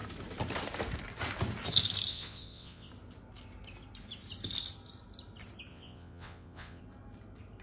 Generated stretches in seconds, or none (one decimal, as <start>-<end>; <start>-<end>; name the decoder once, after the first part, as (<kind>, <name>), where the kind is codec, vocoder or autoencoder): 2.1-2.9 (vocoder, WaveNeXt); 5.7-6.8